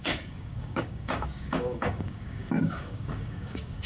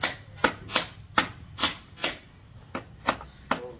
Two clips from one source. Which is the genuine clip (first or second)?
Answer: second